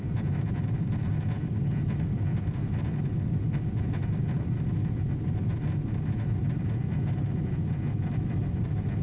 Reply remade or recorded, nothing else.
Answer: recorded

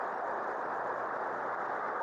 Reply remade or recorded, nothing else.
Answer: recorded